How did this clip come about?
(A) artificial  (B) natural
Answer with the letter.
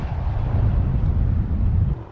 A